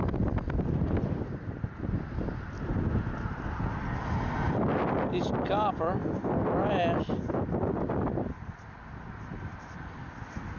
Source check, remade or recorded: recorded